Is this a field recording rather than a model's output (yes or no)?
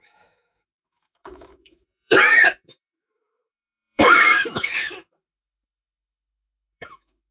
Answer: no